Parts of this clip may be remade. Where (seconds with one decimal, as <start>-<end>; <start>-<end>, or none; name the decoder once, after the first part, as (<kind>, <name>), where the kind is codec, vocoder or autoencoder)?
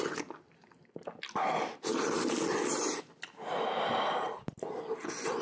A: none